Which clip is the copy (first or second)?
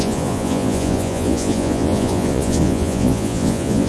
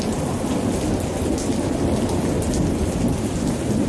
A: first